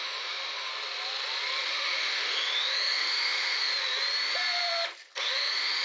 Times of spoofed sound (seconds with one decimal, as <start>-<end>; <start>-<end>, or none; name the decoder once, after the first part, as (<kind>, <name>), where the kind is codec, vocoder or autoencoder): 0.0-0.7 (autoencoder, DAC-VAE); 1.7-3.7; 5.2-5.8